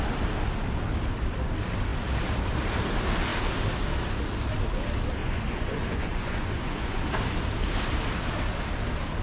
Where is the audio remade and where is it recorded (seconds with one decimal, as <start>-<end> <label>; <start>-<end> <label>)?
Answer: 0.0-5.2 recorded; 5.2-7.0 remade; 7.0-9.2 recorded